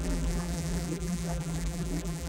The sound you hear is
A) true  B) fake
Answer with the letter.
B